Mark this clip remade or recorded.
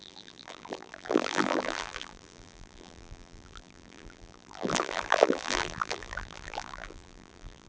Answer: remade